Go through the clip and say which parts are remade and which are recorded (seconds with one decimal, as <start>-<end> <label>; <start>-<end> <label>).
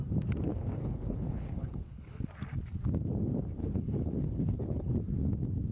0.0-0.5 recorded; 0.5-2.3 remade; 2.3-3.6 recorded; 3.6-4.9 remade; 4.9-5.7 recorded